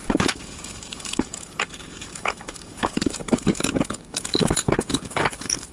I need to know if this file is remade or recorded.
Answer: remade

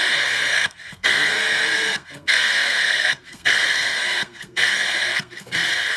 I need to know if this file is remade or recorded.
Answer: remade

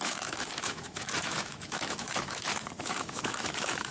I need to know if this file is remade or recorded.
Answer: remade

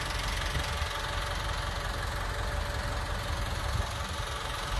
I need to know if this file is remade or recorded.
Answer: recorded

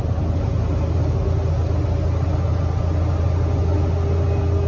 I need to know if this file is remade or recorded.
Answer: recorded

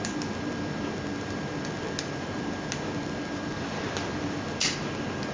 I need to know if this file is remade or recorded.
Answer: recorded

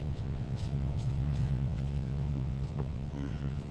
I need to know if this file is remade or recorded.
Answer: remade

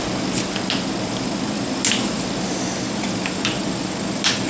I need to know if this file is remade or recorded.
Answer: recorded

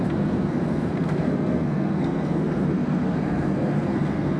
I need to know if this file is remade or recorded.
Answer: remade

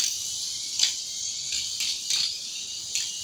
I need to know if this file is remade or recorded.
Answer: remade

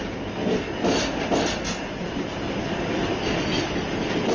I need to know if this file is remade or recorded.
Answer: recorded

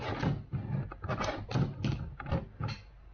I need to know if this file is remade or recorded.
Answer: recorded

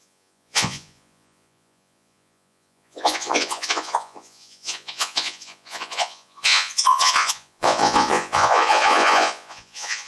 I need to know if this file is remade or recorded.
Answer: remade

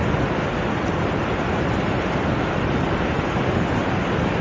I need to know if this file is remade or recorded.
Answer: recorded